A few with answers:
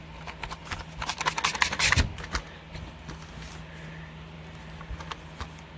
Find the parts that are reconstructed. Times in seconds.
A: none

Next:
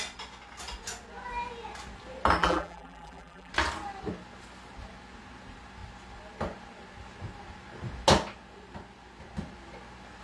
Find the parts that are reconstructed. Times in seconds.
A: 2.4-3.5 (vocoder, BigVGAN v2)

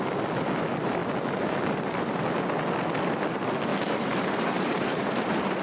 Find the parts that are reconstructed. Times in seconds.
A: 3.7-5.6 (vocoder, BigVGAN v2)

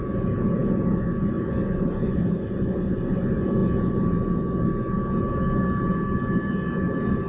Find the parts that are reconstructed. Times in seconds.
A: none

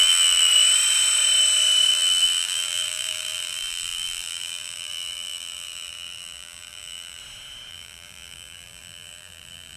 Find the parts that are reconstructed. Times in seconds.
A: 0.0-0.5 (vocoder, BigVGAN v2); 1.9-7.2; 7.7-9.8

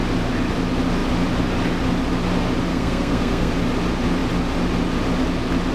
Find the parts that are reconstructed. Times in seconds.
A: 2.7-3.5 (codec, SNAC)

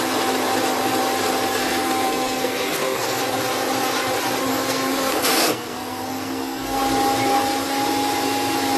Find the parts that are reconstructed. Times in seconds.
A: 1.6-3.2 (codec, SNAC); 4.5-6.8

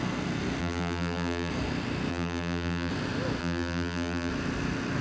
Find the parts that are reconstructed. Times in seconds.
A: 0.6-1.5 (vocoder, BigVGAN v2); 2.1-2.9; 3.4-4.3